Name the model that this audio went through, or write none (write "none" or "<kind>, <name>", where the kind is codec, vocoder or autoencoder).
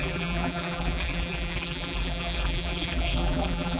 vocoder, BigVGAN v2